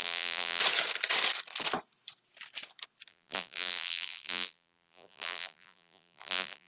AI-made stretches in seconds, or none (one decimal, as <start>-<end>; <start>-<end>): 0.0-0.6; 3.1-6.7